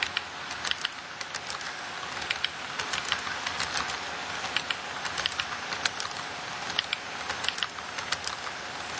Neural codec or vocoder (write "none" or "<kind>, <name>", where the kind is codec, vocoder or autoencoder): none